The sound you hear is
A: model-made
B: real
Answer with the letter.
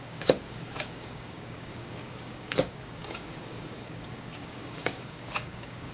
A